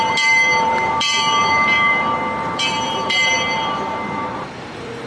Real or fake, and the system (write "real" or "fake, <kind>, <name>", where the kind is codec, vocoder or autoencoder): fake, vocoder, BigVGAN v2